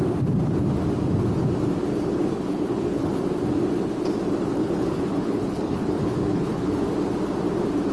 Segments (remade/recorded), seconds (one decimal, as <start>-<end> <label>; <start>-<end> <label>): 0.0-1.9 recorded; 1.9-3.2 remade; 3.2-4.6 recorded; 4.6-6.9 remade; 6.9-7.9 recorded